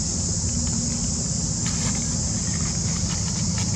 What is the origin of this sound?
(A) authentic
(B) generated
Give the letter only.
A